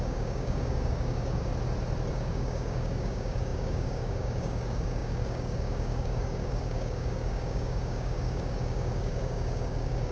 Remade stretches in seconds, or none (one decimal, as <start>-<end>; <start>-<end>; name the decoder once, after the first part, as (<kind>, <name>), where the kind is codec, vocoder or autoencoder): 0.0-1.5 (codec, DAC); 2.1-10.1